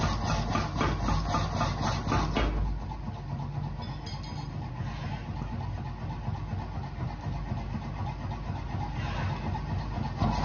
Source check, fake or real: real